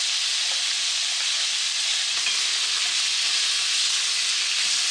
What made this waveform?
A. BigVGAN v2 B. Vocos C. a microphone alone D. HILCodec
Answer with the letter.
C